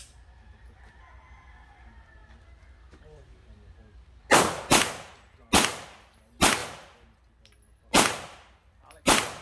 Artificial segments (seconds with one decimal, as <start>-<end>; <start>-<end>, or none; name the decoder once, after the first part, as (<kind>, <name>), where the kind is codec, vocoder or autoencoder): none